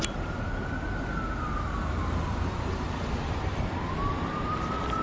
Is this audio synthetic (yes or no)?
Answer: yes